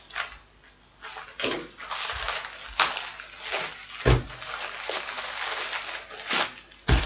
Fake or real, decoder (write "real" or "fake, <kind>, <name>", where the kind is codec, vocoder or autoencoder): real